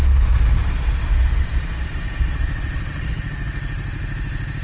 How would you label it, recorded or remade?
recorded